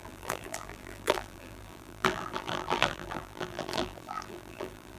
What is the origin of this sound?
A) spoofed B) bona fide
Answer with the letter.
A